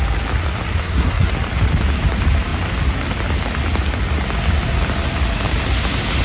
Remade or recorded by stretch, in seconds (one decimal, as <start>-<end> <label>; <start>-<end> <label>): 0.0-0.8 recorded; 0.8-1.3 remade; 1.3-6.2 recorded